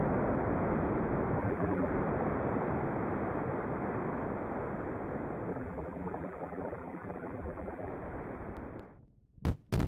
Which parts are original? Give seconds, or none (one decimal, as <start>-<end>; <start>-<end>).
0.0-1.4; 1.9-5.5; 7.9-9.9